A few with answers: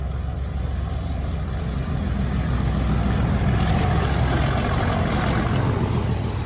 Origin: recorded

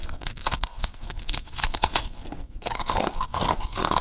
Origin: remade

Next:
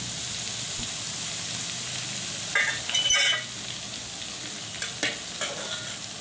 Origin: recorded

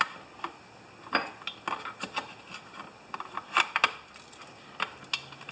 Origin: recorded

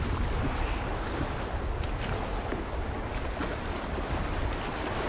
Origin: recorded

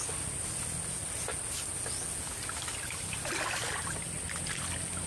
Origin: recorded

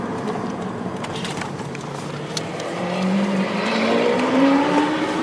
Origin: remade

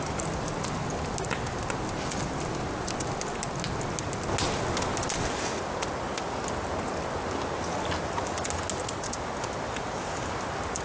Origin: recorded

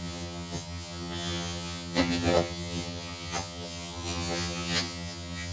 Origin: remade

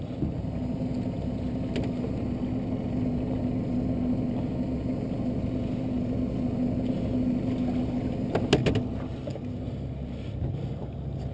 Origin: recorded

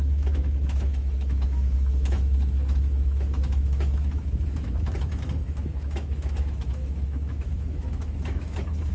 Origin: remade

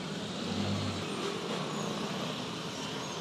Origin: recorded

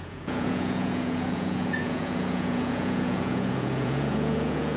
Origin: remade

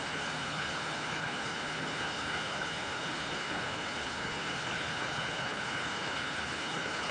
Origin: remade